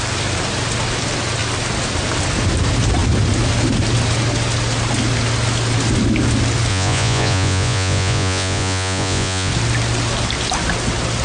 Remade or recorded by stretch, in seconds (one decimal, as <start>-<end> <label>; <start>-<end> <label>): 0.0-6.7 recorded; 6.7-9.5 remade; 9.5-11.2 recorded